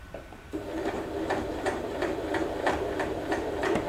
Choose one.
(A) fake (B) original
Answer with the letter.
A